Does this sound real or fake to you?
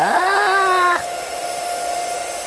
real